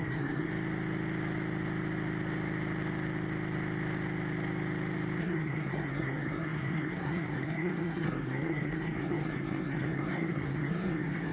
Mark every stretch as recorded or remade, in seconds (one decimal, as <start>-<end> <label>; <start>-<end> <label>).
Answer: 0.0-0.5 remade; 0.5-5.2 recorded; 5.2-11.3 remade